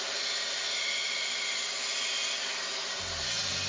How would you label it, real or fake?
real